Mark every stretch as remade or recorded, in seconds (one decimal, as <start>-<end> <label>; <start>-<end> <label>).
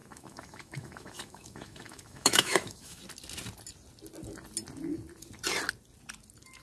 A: 0.0-3.0 remade; 3.0-6.6 recorded